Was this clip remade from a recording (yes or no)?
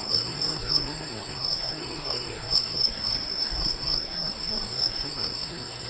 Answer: yes